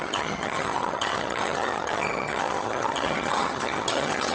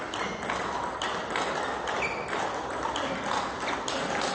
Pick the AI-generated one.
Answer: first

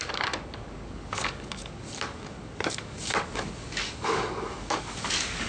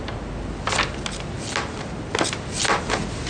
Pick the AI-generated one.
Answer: first